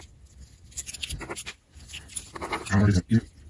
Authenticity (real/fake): real